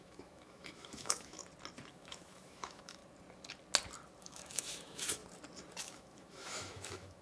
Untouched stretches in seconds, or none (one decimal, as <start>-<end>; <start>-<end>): 1.4-1.9; 3.0-4.2; 5.2-5.8